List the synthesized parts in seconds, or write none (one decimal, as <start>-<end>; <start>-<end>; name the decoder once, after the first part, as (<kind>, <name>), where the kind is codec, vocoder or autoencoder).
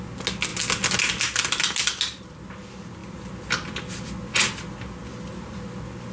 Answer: none